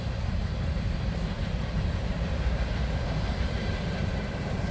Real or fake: fake